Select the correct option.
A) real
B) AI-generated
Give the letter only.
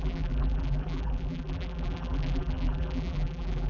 B